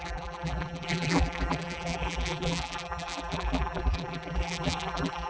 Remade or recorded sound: remade